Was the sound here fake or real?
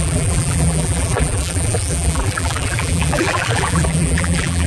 fake